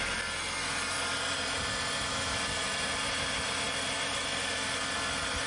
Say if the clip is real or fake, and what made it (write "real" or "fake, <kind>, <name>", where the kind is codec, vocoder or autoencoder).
real